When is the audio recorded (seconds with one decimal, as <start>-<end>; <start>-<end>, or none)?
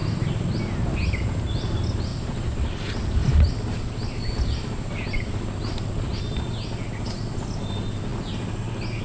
0.6-2.1; 2.7-3.2; 6.5-9.0